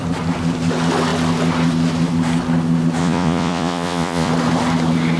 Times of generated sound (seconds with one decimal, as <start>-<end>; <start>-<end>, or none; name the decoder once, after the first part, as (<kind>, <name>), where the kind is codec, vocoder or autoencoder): 3.0-4.3 (vocoder, Vocos)

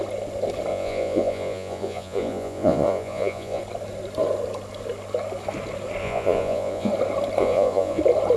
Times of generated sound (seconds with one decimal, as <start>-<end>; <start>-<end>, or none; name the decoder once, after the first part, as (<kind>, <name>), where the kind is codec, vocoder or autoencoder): 0.7-3.6 (vocoder, Vocos); 6.0-6.9; 7.4-8.0

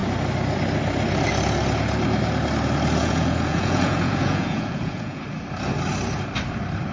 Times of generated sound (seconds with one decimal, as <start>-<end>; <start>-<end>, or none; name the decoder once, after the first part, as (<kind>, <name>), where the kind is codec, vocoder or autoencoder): 3.0-5.2 (vocoder, Vocos)

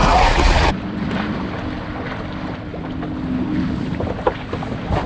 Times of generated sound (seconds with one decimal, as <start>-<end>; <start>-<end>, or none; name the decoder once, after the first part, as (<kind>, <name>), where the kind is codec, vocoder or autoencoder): 0.0-0.7 (vocoder, Vocos)